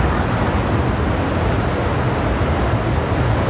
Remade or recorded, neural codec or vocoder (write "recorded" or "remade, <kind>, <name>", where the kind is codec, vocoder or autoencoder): recorded